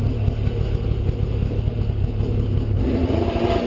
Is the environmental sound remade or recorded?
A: recorded